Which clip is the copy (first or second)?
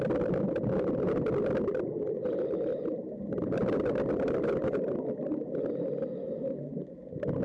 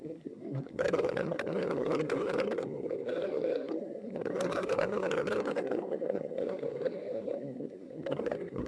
second